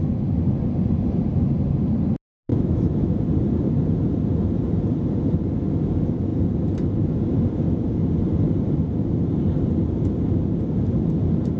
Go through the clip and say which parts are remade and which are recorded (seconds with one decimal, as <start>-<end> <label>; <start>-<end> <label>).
0.0-2.5 recorded; 2.5-3.1 remade; 3.1-11.6 recorded